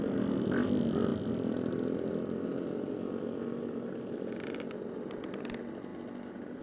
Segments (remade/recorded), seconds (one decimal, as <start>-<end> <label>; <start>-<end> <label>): 0.0-6.6 recorded